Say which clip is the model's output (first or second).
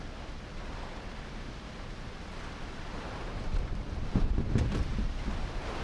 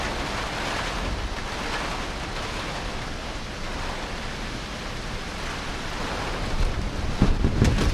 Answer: first